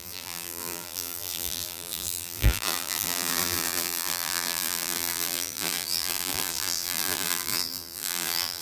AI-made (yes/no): yes